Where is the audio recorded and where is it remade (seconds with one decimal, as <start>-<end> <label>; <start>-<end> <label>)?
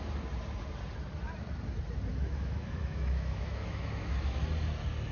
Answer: 0.0-2.1 recorded; 2.1-4.4 remade; 4.4-5.1 recorded